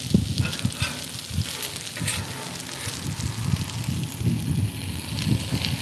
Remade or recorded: recorded